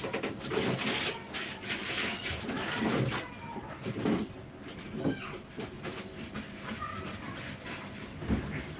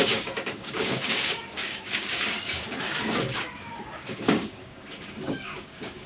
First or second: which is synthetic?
second